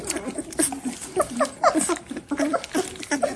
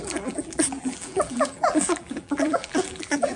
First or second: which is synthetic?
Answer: second